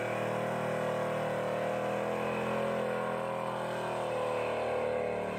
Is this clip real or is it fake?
real